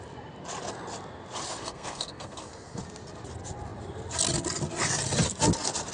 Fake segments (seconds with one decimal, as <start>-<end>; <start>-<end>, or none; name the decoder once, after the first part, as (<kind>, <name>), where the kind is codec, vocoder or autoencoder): 1.6-2.8 (codec, SNAC)

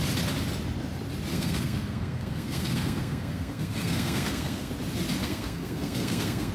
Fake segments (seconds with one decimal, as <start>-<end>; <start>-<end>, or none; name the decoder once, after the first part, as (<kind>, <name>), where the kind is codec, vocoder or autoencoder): 1.3-4.7 (codec, SNAC); 5.2-6.5

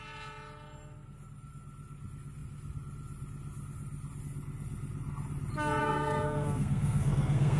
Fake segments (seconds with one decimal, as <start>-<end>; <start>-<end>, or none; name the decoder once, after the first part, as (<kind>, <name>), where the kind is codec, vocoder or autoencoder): 5.8-7.6 (codec, SNAC)

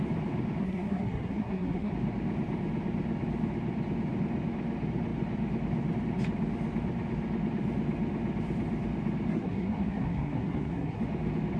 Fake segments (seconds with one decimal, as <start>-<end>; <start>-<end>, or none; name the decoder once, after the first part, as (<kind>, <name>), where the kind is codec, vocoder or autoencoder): 0.6-1.9 (codec, SNAC); 9.3-11.0

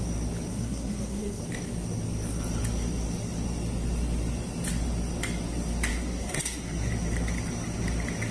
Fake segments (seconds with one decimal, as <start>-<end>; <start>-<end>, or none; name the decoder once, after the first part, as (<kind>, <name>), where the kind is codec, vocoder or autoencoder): 0.5-1.4 (codec, SNAC); 5.9-6.9